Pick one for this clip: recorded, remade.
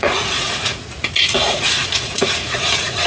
remade